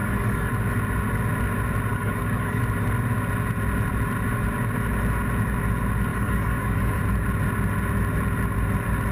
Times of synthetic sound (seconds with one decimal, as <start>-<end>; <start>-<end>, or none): 0.0-0.5; 1.9-2.6; 6.1-7.0